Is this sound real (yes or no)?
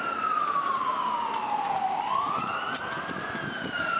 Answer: yes